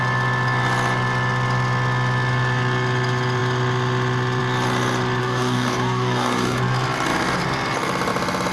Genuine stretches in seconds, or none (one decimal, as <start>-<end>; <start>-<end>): 0.0-5.2; 6.6-8.5